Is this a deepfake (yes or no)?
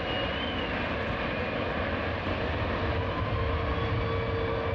no